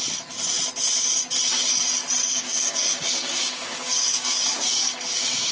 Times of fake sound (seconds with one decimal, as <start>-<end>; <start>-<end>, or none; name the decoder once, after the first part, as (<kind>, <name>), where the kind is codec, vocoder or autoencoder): 2.2-5.5 (codec, DAC)